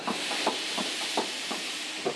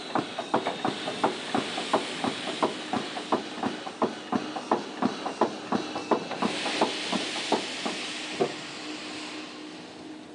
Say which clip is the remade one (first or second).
first